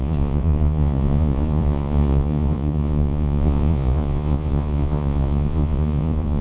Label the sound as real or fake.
fake